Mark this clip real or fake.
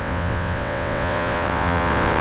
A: fake